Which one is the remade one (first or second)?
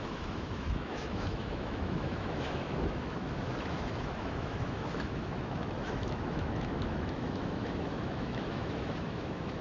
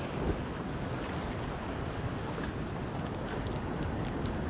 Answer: first